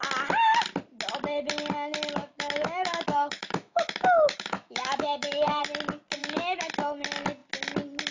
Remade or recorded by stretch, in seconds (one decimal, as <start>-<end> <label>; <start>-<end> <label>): 0.0-2.2 recorded; 2.2-5.6 remade; 5.6-6.2 recorded; 6.2-6.7 remade; 6.7-8.1 recorded